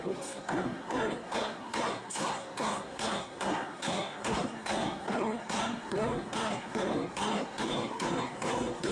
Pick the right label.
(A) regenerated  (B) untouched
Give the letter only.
A